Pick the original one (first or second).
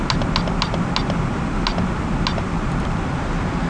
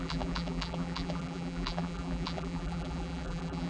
first